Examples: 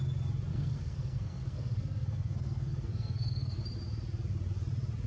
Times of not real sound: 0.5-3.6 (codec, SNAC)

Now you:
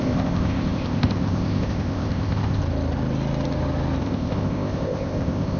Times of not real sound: 0.0-2.6 (codec, ZipCodec); 4.0-5.6

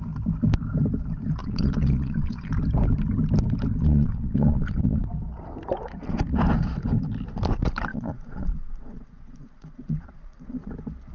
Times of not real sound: 1.4-2.5 (vocoder, Vocos); 3.8-5.0; 7.9-10.7

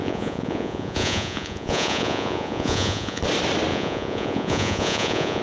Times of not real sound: 0.0-3.2 (vocoder, Vocos); 3.7-5.4